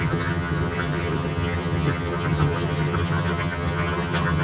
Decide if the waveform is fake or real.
fake